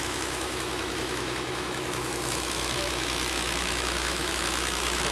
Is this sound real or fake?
fake